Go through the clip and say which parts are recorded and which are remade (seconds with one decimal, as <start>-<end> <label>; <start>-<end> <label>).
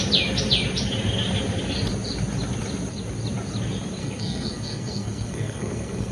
0.0-4.0 recorded; 4.0-6.1 remade